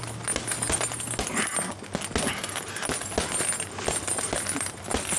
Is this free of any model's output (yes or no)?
yes